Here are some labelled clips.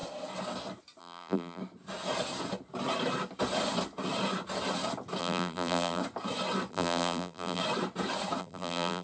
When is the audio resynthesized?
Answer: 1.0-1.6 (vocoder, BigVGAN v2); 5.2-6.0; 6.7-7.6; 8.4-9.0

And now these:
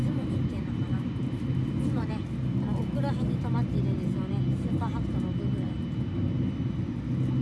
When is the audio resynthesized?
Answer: 0.0-2.1 (vocoder, BigVGAN v2)

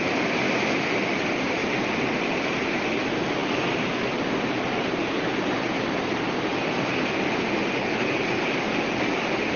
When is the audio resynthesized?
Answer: 1.6-2.8 (vocoder, BigVGAN v2); 5.0-6.5; 7.6-8.6